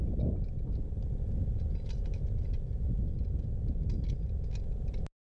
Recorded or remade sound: recorded